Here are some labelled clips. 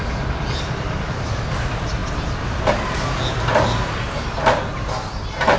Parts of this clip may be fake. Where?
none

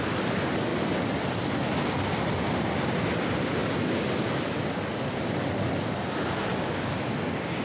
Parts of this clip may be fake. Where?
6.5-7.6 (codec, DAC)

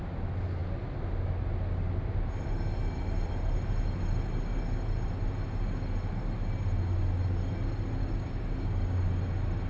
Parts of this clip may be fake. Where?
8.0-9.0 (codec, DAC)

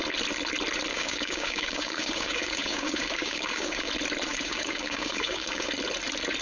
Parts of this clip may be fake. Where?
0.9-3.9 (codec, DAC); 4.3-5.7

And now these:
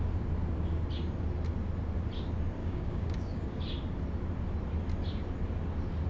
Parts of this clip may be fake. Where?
2.6-3.6 (codec, DAC)

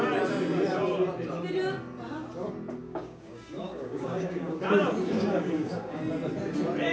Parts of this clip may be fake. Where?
2.8-4.6 (codec, DAC); 5.0-6.0

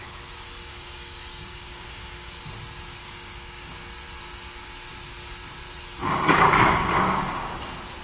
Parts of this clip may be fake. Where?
0.6-2.3 (codec, DAC); 3.0-3.7; 6.0-7.6

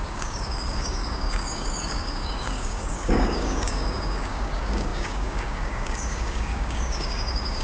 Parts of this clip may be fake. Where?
0.0-7.6 (codec, DAC)